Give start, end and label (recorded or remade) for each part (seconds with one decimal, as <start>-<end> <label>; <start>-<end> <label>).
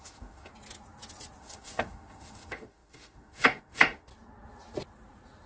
0.0-0.5 remade; 0.5-1.4 recorded; 1.4-4.1 remade; 4.1-5.5 recorded